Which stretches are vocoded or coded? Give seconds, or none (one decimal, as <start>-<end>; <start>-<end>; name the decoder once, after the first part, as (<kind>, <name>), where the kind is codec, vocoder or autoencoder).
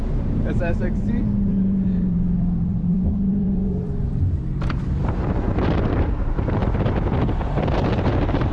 0.0-6.6 (vocoder, BigVGAN v2); 7.2-8.5